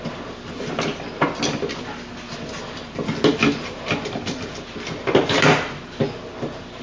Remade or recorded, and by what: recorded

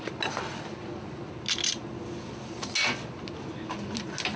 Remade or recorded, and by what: recorded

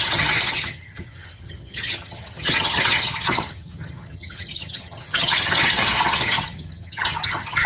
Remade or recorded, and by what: remade, vocoder, HiFi-GAN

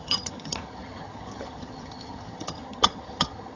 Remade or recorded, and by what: remade, vocoder, HiFi-GAN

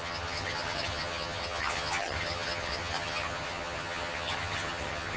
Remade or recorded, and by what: remade, vocoder, HiFi-GAN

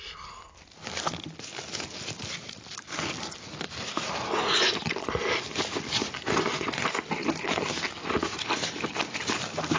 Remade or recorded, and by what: recorded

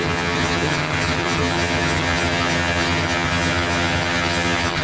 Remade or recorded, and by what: remade, vocoder, HiFi-GAN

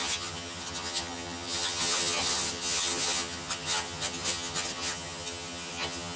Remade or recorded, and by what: remade, vocoder, HiFi-GAN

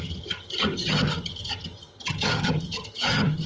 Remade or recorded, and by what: remade, vocoder, HiFi-GAN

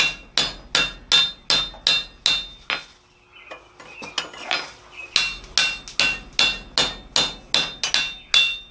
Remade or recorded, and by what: recorded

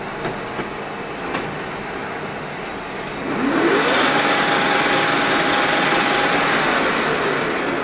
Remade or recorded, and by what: recorded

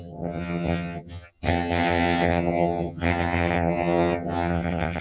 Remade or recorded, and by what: remade, vocoder, HiFi-GAN